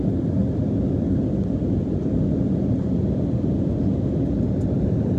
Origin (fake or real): real